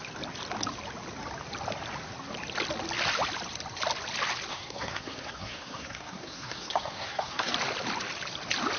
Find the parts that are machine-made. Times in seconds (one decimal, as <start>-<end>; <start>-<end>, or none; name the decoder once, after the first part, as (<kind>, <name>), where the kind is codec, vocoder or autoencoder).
4.5-7.5 (codec, SNAC)